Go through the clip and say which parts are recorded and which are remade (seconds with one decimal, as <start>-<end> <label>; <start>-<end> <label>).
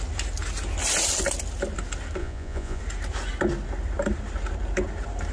0.0-2.2 recorded; 2.2-2.8 remade; 2.8-5.3 recorded